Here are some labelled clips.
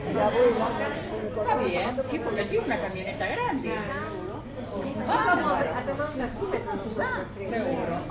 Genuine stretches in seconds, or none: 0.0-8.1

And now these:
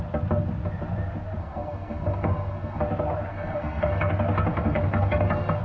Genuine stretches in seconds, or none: 0.0-1.4; 2.8-3.3; 4.1-4.5

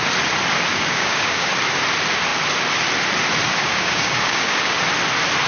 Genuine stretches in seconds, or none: 0.0-0.7; 1.5-3.6; 4.8-5.5

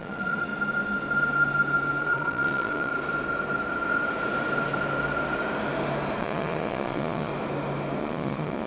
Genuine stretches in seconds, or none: 0.5-2.0; 2.9-6.2; 7.3-8.0

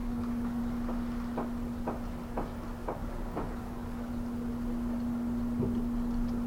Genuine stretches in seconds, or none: 0.6-2.8; 4.1-6.5

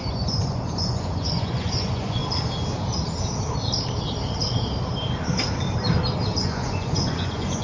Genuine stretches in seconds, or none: 2.2-6.4